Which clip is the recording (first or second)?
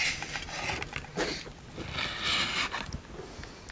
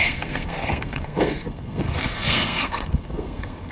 first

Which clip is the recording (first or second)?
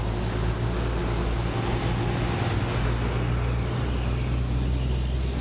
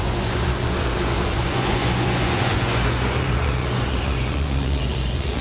first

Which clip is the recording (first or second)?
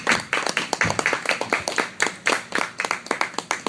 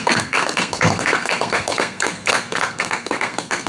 first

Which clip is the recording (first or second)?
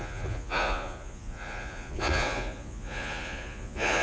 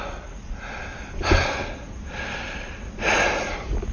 second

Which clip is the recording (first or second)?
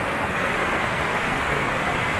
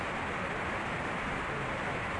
second